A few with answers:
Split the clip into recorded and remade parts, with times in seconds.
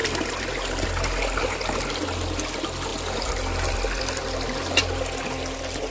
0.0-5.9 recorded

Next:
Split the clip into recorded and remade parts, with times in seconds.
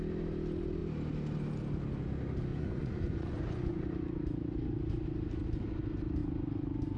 0.0-2.5 recorded; 2.5-3.8 remade; 3.8-7.0 recorded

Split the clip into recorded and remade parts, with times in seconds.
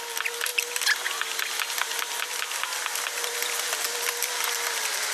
0.0-5.1 recorded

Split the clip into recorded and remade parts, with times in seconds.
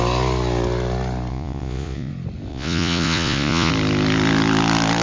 0.0-1.3 recorded; 1.3-2.1 remade; 2.1-2.5 recorded; 2.5-3.7 remade; 3.7-5.0 recorded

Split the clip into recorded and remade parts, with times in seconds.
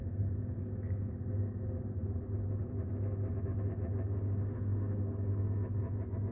0.0-6.3 recorded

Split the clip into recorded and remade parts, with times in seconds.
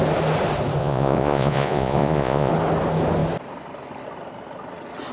0.0-0.8 recorded; 0.8-2.5 remade; 2.5-5.1 recorded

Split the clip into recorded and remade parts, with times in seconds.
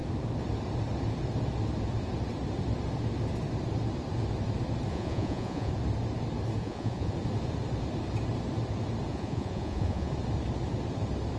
0.0-4.9 recorded; 4.9-5.7 remade; 5.7-6.6 recorded; 6.6-7.1 remade; 7.1-9.1 recorded; 9.1-10.1 remade; 10.1-11.4 recorded